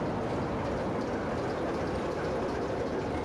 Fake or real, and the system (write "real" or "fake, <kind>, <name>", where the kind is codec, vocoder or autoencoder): real